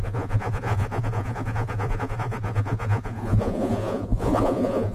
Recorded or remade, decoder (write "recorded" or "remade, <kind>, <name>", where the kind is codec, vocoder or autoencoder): remade, vocoder, Vocos